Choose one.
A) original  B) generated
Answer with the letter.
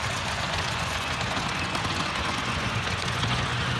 B